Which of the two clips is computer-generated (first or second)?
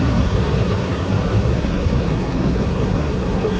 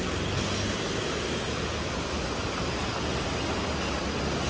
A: first